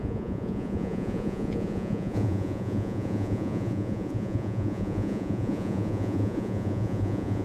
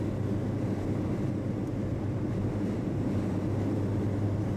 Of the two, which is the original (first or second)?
second